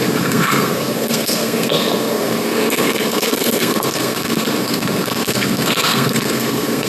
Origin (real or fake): fake